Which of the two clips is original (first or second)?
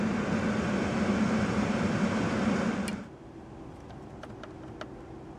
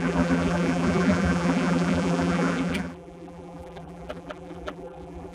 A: first